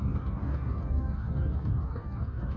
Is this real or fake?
fake